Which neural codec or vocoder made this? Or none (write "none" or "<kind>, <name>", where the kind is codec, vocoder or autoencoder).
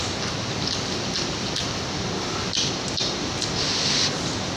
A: none